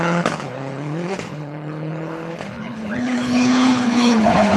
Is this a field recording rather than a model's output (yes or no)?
no